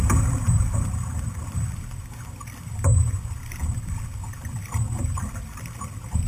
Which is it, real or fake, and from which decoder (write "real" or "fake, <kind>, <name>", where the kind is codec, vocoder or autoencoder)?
real